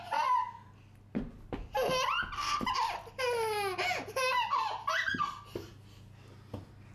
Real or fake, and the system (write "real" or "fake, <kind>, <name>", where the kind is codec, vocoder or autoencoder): real